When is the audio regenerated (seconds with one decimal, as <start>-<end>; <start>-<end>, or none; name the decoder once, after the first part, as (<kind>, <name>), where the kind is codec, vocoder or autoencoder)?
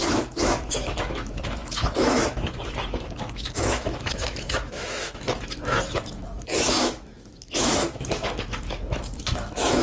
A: 0.0-9.8 (autoencoder, DAC-VAE)